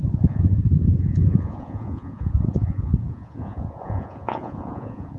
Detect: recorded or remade remade